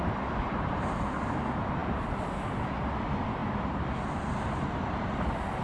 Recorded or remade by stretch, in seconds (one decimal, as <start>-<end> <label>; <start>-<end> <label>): 0.0-5.6 recorded